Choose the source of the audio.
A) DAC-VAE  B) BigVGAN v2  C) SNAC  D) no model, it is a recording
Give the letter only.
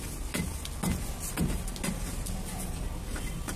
D